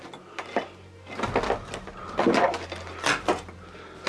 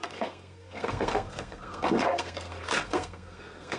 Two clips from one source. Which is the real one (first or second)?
first